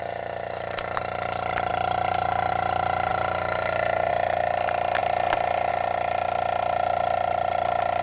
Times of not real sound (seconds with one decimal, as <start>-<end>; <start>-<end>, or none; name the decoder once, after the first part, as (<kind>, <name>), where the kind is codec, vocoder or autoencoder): 1.7-2.5 (vocoder, BigVGAN v2); 3.1-4.1; 5.0-5.7